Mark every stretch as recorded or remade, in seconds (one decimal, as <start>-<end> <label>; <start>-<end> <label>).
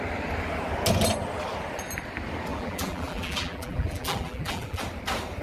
0.0-2.5 recorded; 2.5-4.8 remade; 4.8-5.4 recorded